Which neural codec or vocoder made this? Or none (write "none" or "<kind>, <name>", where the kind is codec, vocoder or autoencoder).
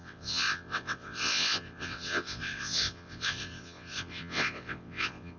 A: vocoder, WaveNeXt